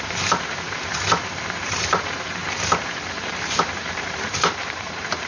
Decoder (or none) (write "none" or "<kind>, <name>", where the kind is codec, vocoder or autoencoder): vocoder, BigVGAN v2